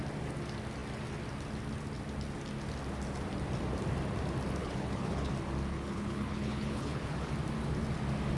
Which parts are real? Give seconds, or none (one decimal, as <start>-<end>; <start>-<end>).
0.0-4.6; 5.3-5.7; 7.3-8.4